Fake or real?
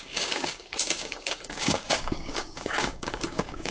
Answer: fake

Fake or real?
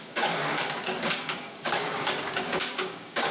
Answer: fake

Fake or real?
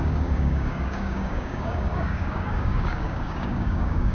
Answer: fake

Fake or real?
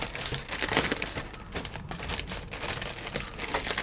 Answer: real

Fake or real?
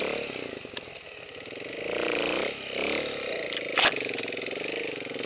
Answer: real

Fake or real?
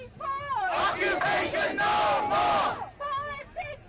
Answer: real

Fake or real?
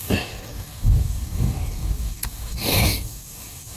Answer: fake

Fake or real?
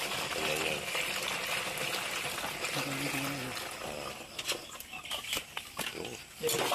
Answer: real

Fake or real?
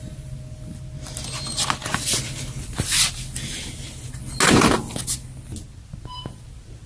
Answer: real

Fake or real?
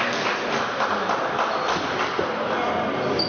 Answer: real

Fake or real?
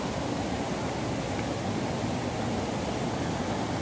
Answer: real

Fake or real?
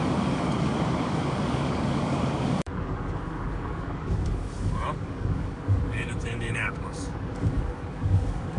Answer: fake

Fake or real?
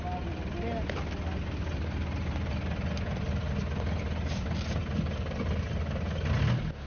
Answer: real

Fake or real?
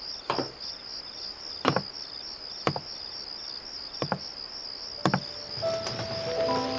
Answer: real